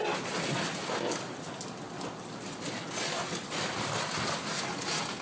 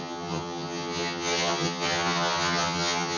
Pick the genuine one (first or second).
first